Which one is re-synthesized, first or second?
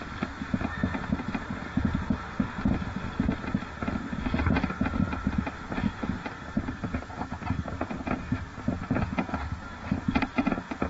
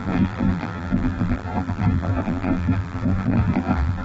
second